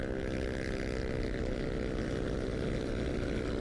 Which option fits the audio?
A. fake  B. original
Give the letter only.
B